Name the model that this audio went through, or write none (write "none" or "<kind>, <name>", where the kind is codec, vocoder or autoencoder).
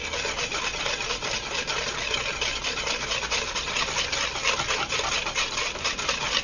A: none